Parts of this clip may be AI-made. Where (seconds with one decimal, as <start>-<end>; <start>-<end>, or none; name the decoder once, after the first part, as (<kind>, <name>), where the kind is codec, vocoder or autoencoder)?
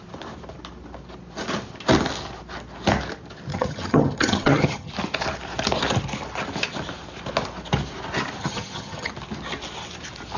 3.5-4.9 (vocoder, HiFi-GAN); 8.4-9.1